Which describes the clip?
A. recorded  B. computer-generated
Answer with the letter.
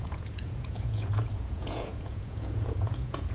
B